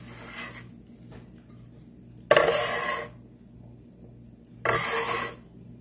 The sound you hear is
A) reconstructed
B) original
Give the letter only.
B